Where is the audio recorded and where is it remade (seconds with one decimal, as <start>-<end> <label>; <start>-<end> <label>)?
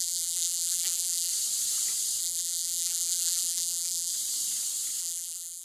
0.0-1.3 remade; 1.3-2.2 recorded; 2.2-4.1 remade; 4.1-5.0 recorded; 5.0-5.6 remade